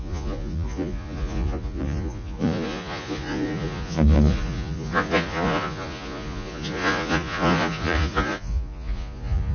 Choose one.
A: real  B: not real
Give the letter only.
B